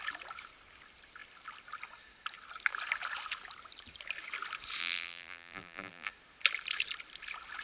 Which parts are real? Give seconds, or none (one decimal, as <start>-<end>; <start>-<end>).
0.0-4.8; 6.1-7.6